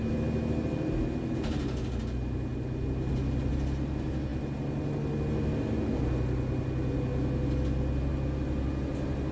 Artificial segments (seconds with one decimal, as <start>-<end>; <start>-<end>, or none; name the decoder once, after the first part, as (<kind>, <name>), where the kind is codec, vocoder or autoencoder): none

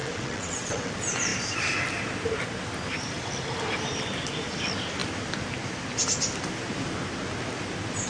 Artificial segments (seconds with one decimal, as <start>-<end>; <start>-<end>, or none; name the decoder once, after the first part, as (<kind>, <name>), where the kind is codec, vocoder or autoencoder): 0.0-0.9 (vocoder, WaveNeXt)

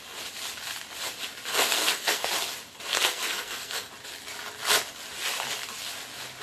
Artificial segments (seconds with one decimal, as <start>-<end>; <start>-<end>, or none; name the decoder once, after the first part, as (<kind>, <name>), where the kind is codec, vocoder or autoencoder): 1.5-2.3 (codec, SNAC); 2.9-3.9

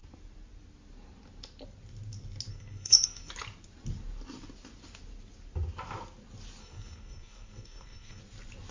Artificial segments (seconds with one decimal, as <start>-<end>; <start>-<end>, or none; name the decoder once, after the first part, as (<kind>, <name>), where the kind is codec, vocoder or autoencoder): 2.5-3.3 (codec, SNAC); 6.6-8.2

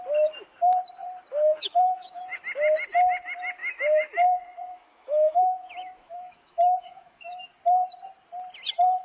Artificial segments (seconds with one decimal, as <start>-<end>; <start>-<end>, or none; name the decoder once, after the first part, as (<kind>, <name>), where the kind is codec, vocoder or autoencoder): 1.3-2.2 (autoencoder, DAC-VAE); 3.6-7.5